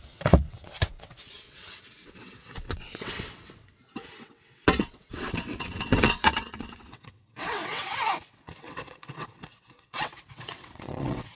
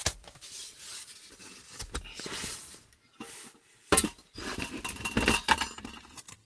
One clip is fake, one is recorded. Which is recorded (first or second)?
second